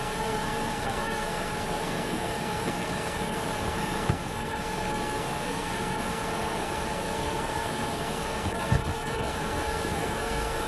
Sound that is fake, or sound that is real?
fake